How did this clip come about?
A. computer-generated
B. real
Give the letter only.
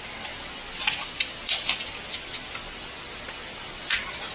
B